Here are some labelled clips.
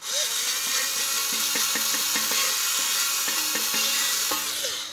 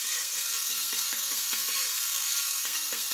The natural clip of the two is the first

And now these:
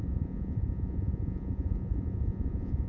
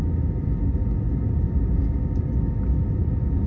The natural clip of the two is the second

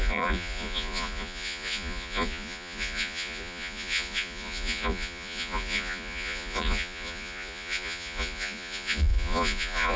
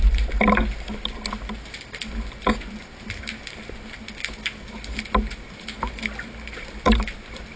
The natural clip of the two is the second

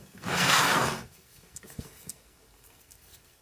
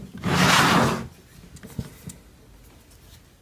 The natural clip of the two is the second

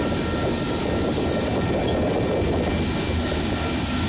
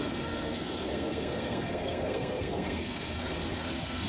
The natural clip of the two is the first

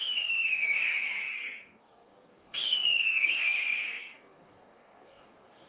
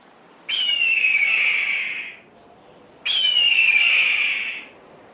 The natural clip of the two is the second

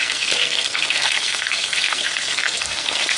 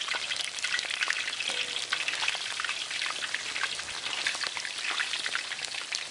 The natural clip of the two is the second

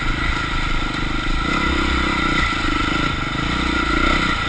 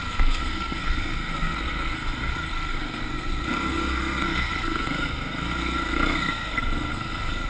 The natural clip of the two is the first